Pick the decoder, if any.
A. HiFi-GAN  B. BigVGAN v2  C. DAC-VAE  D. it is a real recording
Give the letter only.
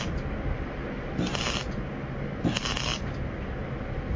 D